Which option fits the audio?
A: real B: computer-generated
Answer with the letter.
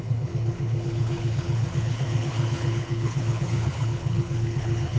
B